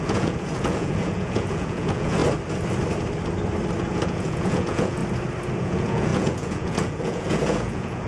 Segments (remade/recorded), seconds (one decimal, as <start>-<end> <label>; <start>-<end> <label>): 0.0-2.2 remade; 2.2-3.8 recorded; 3.8-5.0 remade; 5.0-5.6 recorded; 5.6-8.1 remade